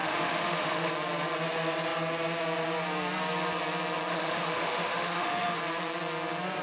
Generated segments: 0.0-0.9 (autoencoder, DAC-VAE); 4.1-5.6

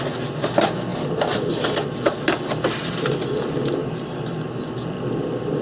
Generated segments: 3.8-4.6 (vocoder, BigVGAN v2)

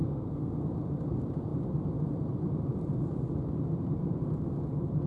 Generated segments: 0.0-0.5 (codec, SNAC)

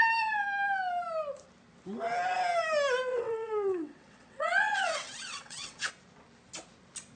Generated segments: 3.1-5.9 (vocoder, WaveNeXt)

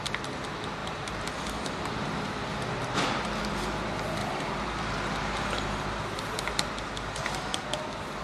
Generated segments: 0.8-3.8 (vocoder, BigVGAN v2); 4.2-6.0